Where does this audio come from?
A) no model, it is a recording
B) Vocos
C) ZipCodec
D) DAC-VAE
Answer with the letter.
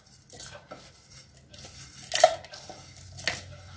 A